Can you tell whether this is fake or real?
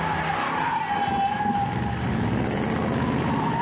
real